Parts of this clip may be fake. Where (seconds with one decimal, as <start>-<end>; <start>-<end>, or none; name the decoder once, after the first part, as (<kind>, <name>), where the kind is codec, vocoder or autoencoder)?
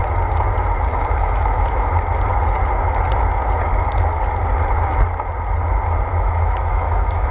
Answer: 0.9-1.9 (autoencoder, DAC-VAE); 6.1-7.3